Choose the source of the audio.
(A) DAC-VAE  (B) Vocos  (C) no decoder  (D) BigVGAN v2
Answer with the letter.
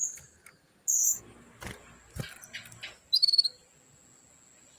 C